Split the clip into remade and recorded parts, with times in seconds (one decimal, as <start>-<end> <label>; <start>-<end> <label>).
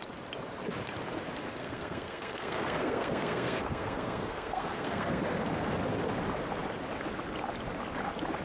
0.0-1.6 recorded; 1.6-5.2 remade; 5.2-8.4 recorded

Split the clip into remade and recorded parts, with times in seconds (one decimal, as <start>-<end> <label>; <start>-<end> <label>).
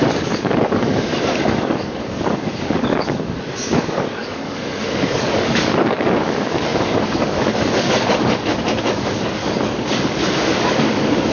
0.0-11.3 remade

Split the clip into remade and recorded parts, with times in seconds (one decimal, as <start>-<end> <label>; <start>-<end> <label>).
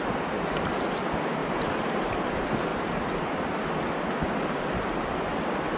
0.0-1.4 recorded; 1.4-2.0 remade; 2.0-2.7 recorded; 2.7-3.2 remade; 3.2-5.8 recorded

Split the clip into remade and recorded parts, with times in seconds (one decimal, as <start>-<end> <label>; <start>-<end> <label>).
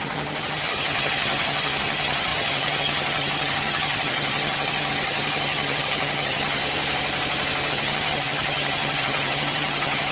0.0-6.6 remade; 6.6-7.7 recorded; 7.7-10.1 remade